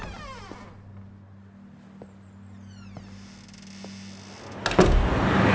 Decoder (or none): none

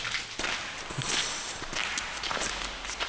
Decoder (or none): none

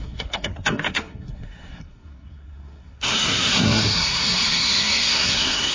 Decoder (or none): codec, SNAC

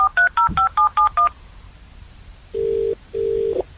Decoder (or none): none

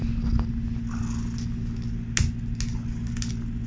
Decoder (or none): none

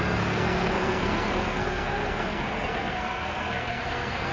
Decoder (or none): codec, SNAC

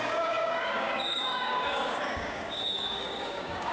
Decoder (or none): codec, DAC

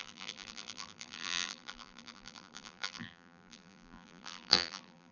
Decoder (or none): vocoder, BigVGAN v2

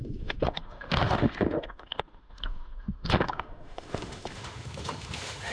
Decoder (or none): autoencoder, DAC-VAE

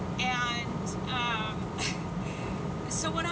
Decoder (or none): none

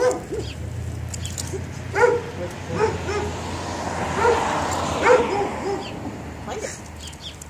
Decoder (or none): none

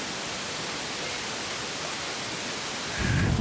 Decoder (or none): none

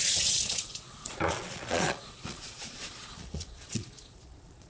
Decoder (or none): vocoder, Vocos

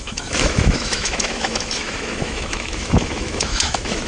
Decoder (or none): autoencoder, DAC-VAE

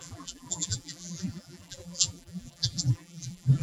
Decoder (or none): vocoder, BigVGAN v2